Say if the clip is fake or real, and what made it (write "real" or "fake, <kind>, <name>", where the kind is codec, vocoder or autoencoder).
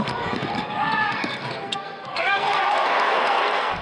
fake, codec, SNAC